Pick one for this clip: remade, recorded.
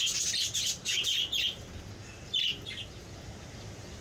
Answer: recorded